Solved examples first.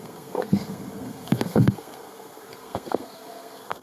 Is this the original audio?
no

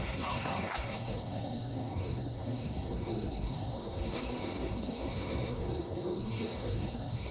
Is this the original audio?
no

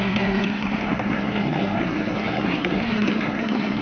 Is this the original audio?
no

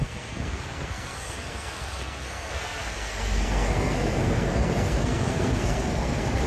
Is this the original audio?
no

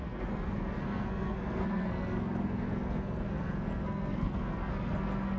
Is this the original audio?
no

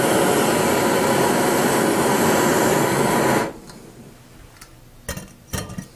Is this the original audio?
yes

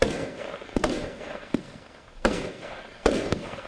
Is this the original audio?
no